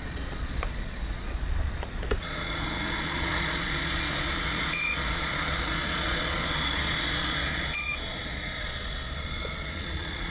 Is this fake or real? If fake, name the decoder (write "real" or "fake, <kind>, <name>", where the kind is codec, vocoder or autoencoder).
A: fake, vocoder, Vocos